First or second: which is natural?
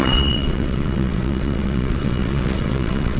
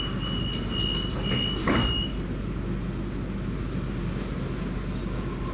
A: second